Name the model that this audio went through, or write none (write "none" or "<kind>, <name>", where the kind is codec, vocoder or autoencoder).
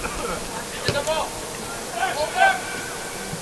none